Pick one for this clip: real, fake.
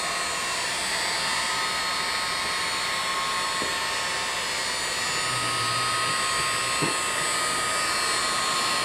real